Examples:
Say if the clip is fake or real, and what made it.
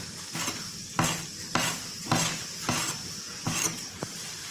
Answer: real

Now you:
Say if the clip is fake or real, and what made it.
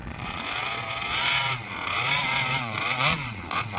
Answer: fake, vocoder, Vocos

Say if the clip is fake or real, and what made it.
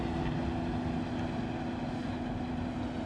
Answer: real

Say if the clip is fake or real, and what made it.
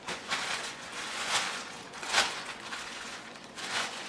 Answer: fake, vocoder, Vocos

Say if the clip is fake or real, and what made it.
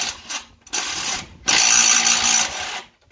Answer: real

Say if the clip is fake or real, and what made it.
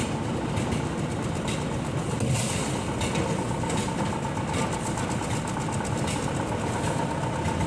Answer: real